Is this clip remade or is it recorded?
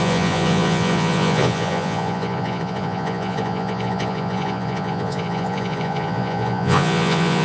remade